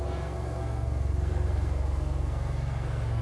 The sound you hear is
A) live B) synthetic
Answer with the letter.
B